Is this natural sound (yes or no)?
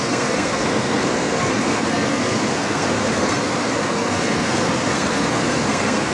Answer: no